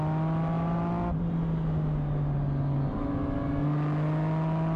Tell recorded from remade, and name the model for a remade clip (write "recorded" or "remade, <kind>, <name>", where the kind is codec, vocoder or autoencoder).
recorded